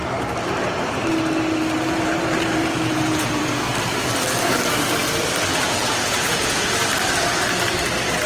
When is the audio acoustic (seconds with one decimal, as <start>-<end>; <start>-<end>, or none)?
0.0-2.6; 3.6-5.5; 6.7-8.3